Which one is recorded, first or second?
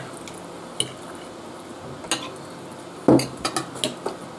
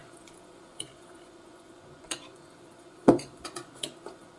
first